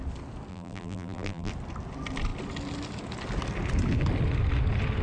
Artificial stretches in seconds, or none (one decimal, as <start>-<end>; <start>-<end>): 0.5-1.5